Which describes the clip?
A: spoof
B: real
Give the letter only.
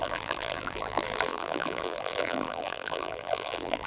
A